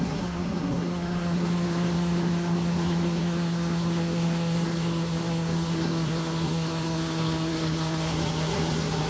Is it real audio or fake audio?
fake